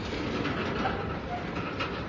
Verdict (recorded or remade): recorded